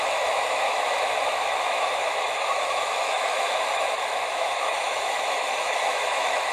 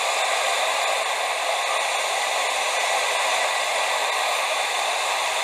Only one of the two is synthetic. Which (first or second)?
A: first